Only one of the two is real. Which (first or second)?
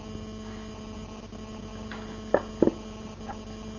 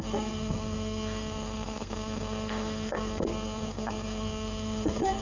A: first